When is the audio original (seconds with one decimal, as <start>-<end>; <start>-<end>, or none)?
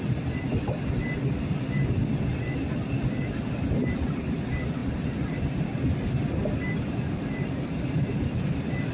0.0-8.9